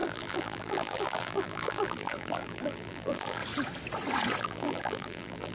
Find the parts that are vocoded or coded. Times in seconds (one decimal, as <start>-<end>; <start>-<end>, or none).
0.0-3.4; 4.4-5.5